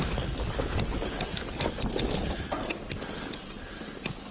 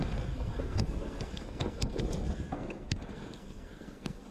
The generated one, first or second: second